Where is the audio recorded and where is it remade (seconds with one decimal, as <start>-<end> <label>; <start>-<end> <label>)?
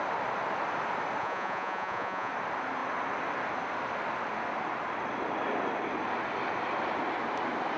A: 0.0-1.2 recorded; 1.2-2.3 remade; 2.3-7.8 recorded